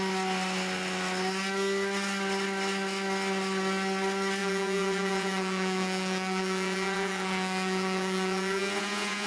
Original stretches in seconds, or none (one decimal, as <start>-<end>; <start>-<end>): 0.0-4.4